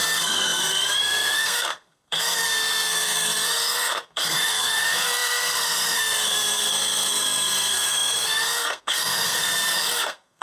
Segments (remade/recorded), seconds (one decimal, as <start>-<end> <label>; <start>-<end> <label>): 0.0-10.4 remade